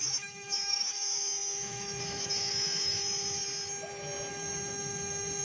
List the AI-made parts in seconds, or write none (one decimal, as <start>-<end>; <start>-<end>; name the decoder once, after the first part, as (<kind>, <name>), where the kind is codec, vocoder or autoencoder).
0.0-3.4 (autoencoder, DAC-VAE); 4.3-5.4